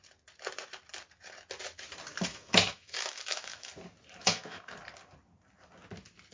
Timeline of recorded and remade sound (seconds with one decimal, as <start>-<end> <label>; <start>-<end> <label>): 0.0-2.3 recorded; 2.3-3.7 remade; 3.7-4.2 recorded; 4.2-4.7 remade; 4.7-6.3 recorded